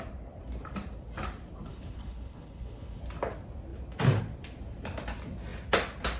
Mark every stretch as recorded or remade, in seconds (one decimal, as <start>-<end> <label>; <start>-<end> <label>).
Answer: 0.0-1.7 recorded; 1.7-3.0 remade; 3.0-6.2 recorded